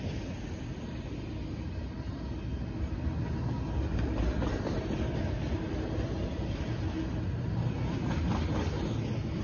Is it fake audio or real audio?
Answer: real